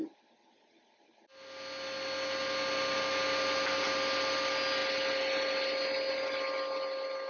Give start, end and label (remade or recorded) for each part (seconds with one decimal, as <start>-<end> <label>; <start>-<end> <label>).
0.0-7.3 recorded

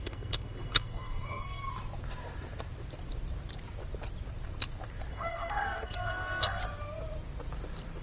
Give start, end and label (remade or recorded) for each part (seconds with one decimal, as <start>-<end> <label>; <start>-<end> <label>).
0.0-1.6 remade; 1.6-5.1 recorded; 5.1-6.6 remade; 6.6-8.0 recorded

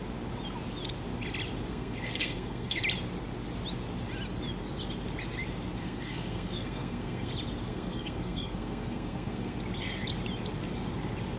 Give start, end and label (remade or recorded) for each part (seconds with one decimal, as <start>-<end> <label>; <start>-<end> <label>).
0.0-1.7 recorded; 1.7-2.8 remade; 2.8-5.8 recorded; 5.8-7.3 remade; 7.3-7.7 recorded; 7.7-9.6 remade; 9.6-11.4 recorded

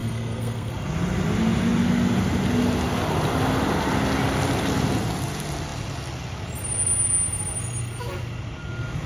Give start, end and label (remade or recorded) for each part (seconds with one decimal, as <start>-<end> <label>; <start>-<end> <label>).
0.0-0.7 remade; 0.7-9.1 recorded

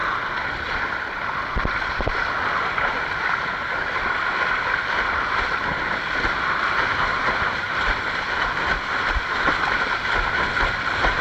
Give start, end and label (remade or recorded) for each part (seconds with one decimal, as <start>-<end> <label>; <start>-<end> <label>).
0.0-11.2 recorded

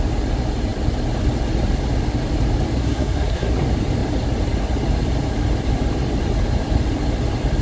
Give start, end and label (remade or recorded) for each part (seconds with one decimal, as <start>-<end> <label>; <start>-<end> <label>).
0.0-2.8 recorded; 2.8-3.5 remade; 3.5-7.6 recorded

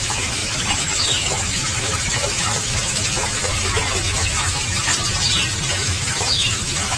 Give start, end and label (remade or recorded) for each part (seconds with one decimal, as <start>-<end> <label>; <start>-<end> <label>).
0.0-4.9 remade; 4.9-5.7 recorded; 5.7-7.0 remade